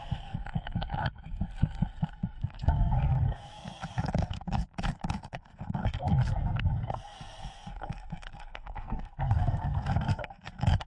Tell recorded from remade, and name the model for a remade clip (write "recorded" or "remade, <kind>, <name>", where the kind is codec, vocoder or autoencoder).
remade, codec, SNAC